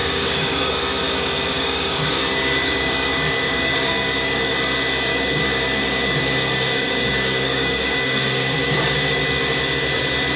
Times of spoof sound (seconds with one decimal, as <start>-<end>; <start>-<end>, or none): 0.0-0.7; 1.5-4.5; 5.1-9.2